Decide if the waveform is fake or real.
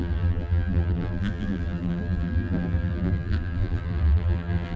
fake